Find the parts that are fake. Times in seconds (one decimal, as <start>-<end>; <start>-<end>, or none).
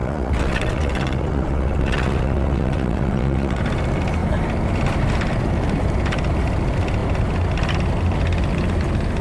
0.0-3.6